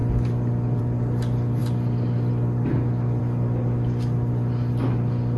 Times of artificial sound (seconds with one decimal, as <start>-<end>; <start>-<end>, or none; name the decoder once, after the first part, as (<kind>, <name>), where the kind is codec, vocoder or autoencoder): none